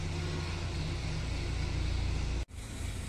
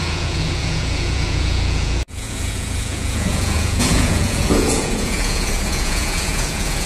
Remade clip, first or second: second